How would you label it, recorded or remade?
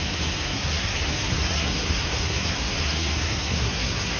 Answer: remade